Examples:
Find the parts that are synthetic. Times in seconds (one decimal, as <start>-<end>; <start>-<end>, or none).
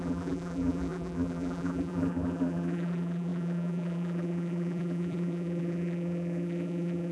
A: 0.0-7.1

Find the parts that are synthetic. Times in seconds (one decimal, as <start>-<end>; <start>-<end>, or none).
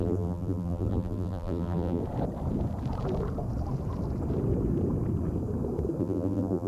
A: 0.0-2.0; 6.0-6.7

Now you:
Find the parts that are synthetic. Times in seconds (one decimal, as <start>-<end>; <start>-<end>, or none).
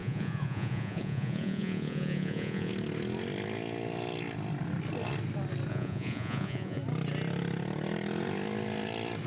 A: 0.0-2.7; 5.7-6.8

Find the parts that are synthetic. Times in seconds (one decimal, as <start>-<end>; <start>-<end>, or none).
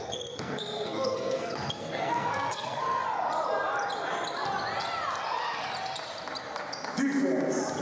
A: 0.0-3.0